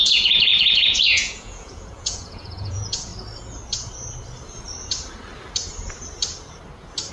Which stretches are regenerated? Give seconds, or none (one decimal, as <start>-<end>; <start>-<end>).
0.0-3.1